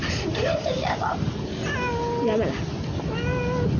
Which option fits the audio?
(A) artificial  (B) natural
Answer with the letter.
B